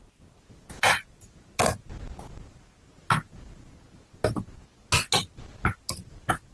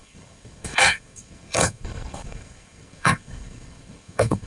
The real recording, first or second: first